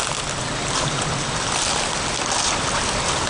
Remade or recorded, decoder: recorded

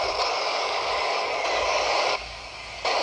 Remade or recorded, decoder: remade, codec, DAC